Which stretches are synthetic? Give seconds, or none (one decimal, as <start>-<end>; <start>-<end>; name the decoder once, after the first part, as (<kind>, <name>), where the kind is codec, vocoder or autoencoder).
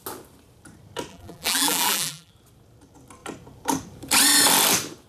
1.1-2.3 (vocoder, BigVGAN v2)